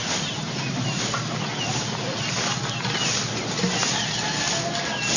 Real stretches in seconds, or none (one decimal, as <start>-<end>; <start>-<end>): 0.0-5.2